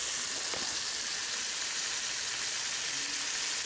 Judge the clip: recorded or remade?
recorded